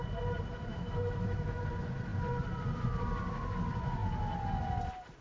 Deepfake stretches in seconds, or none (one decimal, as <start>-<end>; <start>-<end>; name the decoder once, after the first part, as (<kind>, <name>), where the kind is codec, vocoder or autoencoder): 0.7-1.6 (autoencoder, DAC-VAE)